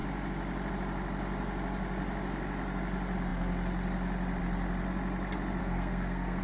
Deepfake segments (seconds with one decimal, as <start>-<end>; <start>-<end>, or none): 5.6-6.4